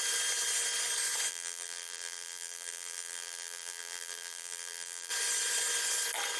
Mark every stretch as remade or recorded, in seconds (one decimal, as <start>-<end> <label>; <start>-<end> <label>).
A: 0.0-1.3 recorded; 1.3-5.1 remade; 5.1-6.4 recorded